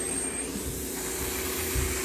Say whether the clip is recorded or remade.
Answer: recorded